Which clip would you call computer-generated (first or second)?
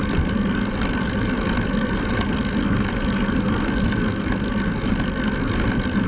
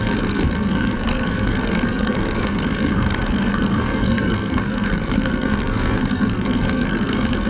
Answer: second